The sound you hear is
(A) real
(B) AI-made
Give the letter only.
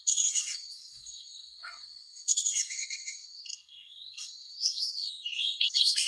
B